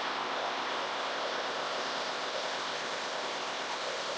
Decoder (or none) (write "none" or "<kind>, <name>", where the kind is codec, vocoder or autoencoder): codec, ZipCodec